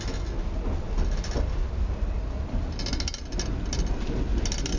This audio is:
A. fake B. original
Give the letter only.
B